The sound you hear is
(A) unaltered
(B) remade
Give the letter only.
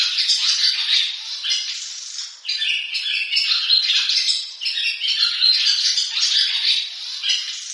A